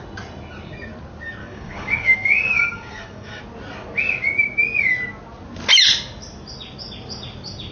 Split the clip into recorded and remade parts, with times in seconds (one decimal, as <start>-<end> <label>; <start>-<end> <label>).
0.0-1.4 recorded; 1.4-3.4 remade; 3.4-7.7 recorded